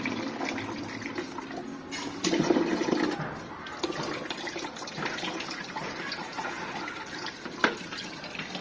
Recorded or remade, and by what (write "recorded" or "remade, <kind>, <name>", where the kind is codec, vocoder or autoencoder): recorded